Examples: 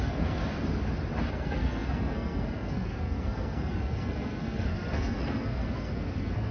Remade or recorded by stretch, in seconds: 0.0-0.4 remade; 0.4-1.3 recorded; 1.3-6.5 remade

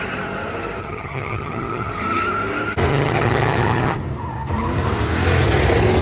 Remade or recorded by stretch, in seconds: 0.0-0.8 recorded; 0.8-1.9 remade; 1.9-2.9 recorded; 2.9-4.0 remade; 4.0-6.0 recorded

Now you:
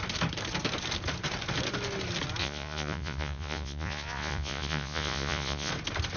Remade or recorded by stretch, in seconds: 0.0-2.4 recorded; 2.4-5.7 remade; 5.7-6.2 recorded

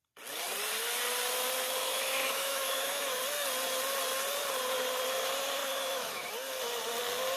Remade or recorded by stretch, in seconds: 0.0-1.8 recorded; 1.8-3.2 remade; 3.2-5.6 recorded; 5.6-6.3 remade; 6.3-7.4 recorded

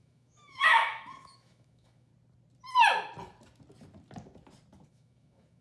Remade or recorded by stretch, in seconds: 0.0-2.1 remade; 2.1-4.9 recorded; 4.9-5.6 remade